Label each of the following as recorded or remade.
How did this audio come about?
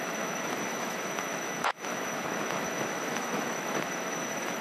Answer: remade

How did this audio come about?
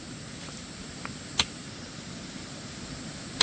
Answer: recorded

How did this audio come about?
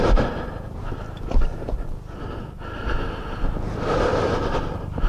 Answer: recorded